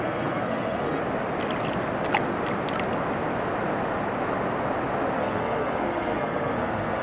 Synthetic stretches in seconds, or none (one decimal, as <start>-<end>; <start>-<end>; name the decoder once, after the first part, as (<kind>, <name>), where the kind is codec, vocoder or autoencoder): 0.0-1.0 (codec, SNAC); 5.2-7.0